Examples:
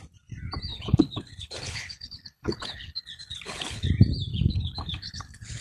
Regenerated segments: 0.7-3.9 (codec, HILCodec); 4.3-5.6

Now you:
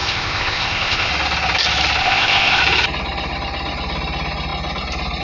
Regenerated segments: 0.0-1.1 (codec, ZipCodec); 2.0-2.6